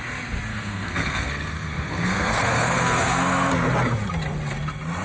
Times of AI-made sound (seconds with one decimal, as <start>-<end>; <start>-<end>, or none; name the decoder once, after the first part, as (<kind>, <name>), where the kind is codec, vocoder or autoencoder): 0.5-3.5 (codec, SNAC)